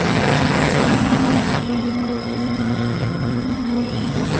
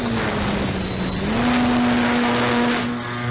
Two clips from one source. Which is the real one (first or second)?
second